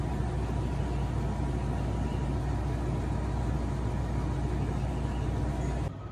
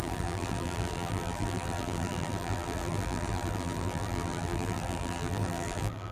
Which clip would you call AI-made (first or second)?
second